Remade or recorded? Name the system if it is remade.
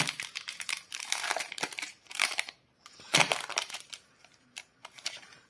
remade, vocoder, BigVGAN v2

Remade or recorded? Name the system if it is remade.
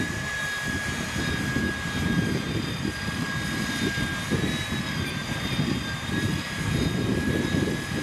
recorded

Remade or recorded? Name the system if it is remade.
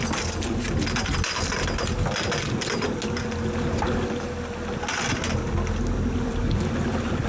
recorded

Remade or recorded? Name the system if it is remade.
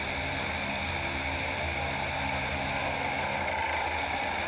recorded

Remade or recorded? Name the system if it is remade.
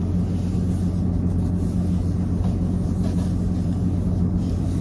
recorded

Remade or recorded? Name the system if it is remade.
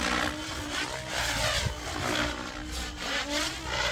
recorded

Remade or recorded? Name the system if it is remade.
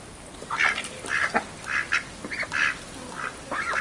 recorded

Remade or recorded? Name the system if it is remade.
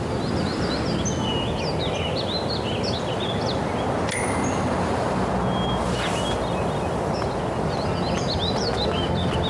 recorded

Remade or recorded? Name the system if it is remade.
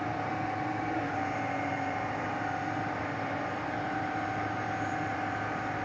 remade, vocoder, BigVGAN v2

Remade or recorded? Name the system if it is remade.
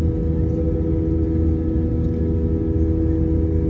recorded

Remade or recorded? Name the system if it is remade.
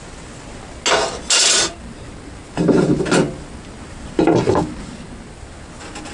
recorded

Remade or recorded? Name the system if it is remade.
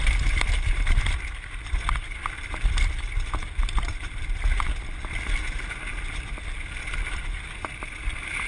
recorded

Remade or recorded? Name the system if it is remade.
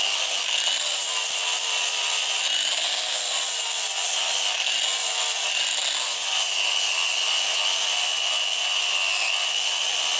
recorded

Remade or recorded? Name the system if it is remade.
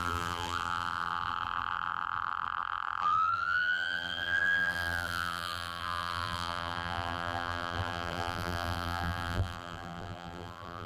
remade, vocoder, BigVGAN v2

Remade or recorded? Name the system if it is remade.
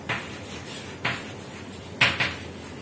recorded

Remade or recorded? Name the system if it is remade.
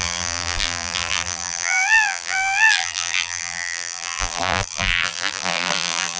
remade, vocoder, BigVGAN v2